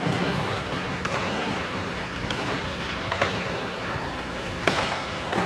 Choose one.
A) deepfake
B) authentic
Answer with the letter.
A